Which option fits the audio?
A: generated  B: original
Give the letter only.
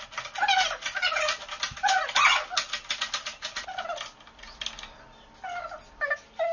B